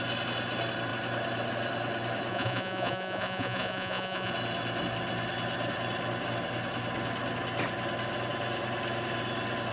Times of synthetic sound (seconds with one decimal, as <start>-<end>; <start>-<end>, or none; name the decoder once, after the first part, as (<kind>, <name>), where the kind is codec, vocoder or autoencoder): 2.3-4.3 (vocoder, Vocos)